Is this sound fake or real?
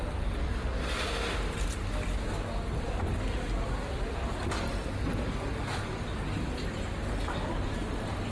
real